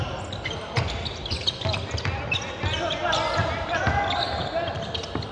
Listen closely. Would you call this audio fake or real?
real